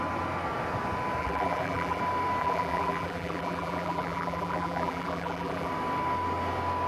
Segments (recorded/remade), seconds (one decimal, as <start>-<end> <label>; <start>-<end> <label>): 0.0-1.2 recorded; 1.2-2.0 remade; 2.0-2.4 recorded; 2.4-5.7 remade; 5.7-6.9 recorded